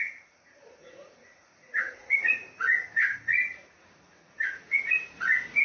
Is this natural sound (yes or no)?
no